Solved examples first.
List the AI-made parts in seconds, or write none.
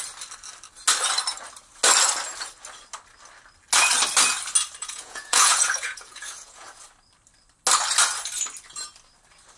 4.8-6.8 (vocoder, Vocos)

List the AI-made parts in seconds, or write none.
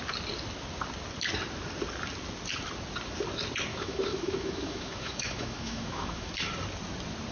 3.7-6.3 (autoencoder, DAC-VAE)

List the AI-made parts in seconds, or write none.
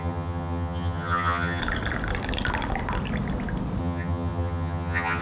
0.0-1.6 (vocoder, HiFi-GAN); 3.8-5.2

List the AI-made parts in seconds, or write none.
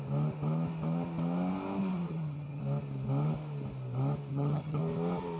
1.9-2.6 (vocoder, HiFi-GAN); 4.3-4.8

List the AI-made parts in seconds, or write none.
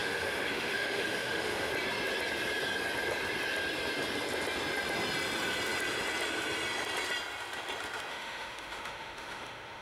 0.0-1.7 (autoencoder, DAC-VAE); 8.1-9.8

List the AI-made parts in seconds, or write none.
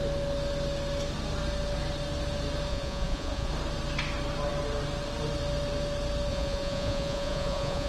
2.7-3.5 (vocoder, Vocos); 6.3-7.9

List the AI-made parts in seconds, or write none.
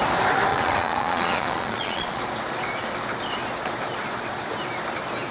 0.5-2.2 (vocoder, Vocos)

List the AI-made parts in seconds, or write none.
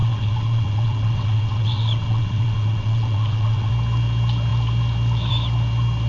0.0-3.7 (vocoder, WaveNeXt)